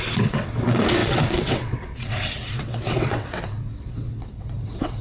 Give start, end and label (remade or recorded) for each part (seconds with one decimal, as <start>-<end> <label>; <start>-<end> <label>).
0.0-5.0 remade